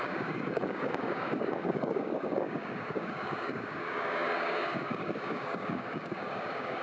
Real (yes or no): no